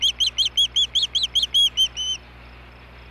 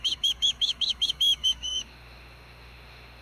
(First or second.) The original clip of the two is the first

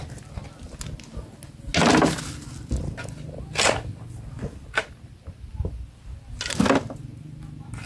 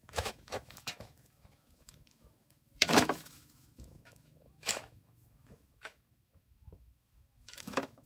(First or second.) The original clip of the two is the first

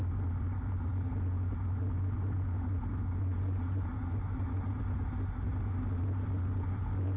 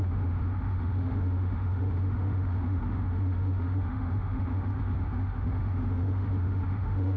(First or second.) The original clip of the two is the first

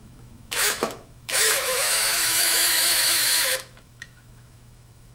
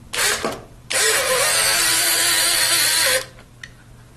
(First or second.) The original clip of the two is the second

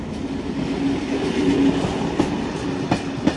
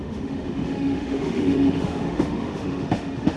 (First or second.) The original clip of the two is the first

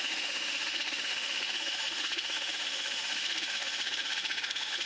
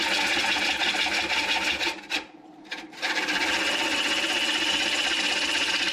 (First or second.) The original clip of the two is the second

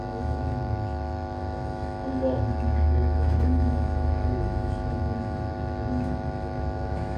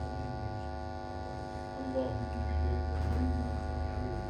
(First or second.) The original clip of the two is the second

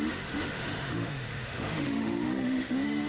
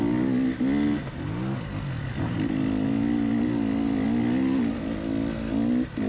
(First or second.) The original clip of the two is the second